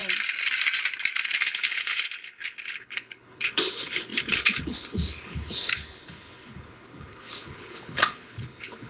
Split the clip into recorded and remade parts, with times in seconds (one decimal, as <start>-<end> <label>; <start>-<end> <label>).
0.0-1.4 recorded; 1.4-8.9 remade